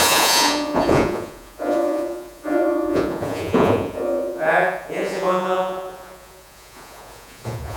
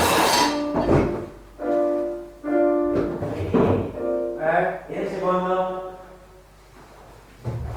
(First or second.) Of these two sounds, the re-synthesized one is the first